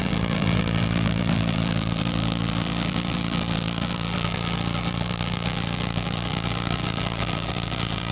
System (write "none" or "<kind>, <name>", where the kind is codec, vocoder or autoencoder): vocoder, BigVGAN v2